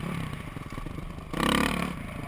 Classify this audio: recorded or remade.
recorded